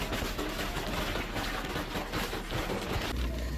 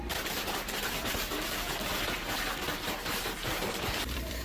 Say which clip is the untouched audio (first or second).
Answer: first